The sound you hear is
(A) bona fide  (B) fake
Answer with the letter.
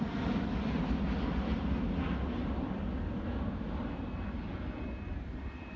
A